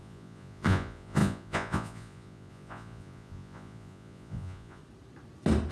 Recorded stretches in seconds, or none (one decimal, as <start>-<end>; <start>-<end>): 4.8-5.7

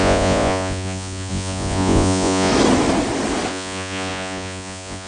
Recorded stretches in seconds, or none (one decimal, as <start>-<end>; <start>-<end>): 2.5-3.5

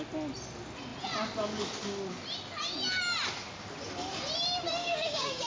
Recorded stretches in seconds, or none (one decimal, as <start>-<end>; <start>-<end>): 0.0-4.8

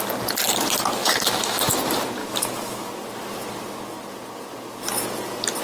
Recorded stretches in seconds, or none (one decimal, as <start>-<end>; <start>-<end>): 0.0-1.0; 1.8-2.2; 2.9-5.6

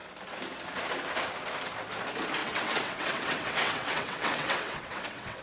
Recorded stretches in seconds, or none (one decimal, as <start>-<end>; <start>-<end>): 0.0-2.4